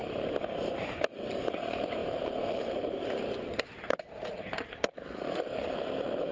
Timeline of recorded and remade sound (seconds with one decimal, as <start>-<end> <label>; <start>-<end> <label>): 0.0-1.4 recorded; 1.4-6.3 remade